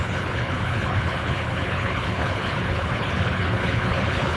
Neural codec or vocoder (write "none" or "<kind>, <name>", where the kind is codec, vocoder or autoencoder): codec, HILCodec